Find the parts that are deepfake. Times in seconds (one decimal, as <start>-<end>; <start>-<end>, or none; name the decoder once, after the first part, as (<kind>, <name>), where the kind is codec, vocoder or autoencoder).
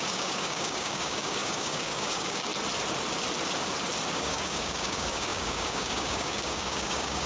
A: 0.0-2.5 (codec, DAC); 4.1-7.3